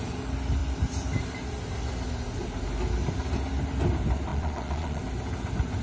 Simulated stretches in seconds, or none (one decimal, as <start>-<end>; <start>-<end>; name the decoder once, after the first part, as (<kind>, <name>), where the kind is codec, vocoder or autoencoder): 4.3-5.0 (vocoder, Vocos)